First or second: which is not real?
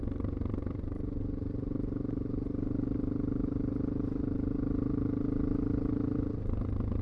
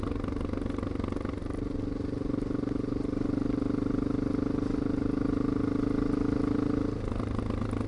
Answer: first